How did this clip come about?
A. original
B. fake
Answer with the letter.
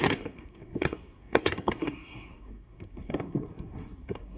B